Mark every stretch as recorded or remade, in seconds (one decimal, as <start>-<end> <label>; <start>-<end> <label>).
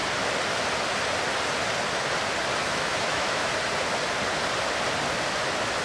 0.0-2.6 recorded; 2.6-3.5 remade; 3.5-5.8 recorded